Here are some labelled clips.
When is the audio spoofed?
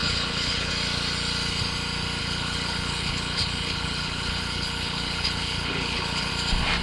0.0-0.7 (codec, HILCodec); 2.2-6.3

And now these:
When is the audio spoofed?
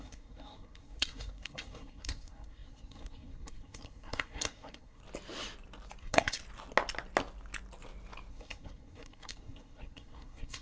0.0-5.0 (codec, SNAC); 6.0-6.4; 8.3-10.6